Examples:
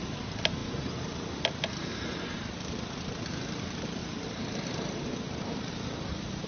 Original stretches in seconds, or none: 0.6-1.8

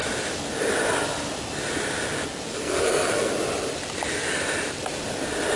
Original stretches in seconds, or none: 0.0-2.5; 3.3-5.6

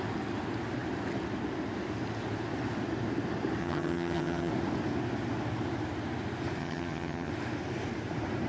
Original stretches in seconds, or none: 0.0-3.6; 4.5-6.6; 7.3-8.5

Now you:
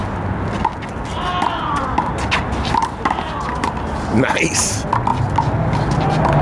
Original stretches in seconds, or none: 0.0-6.4

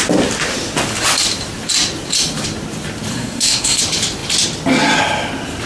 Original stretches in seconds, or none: 0.0-3.1; 3.8-5.7

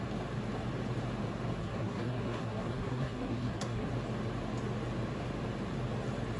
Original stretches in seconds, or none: 0.0-1.6; 3.9-6.4

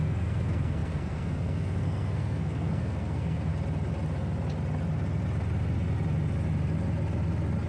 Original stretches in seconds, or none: 3.5-7.7